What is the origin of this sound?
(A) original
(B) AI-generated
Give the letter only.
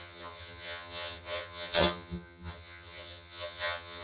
B